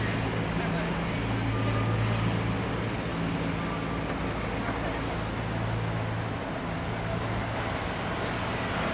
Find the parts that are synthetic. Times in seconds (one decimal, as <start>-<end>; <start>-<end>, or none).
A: none

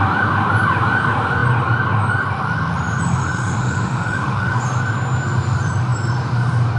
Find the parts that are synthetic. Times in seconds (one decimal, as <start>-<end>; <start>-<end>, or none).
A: 3.2-4.6

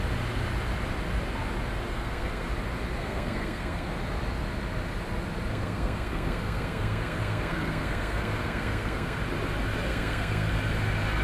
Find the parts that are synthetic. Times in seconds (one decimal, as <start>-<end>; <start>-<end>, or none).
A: 1.9-2.5; 3.0-3.9; 5.5-9.2; 9.9-10.5

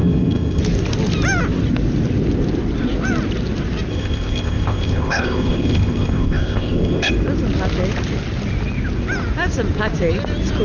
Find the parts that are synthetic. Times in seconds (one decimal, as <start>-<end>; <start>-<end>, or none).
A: 0.0-0.6; 3.9-7.1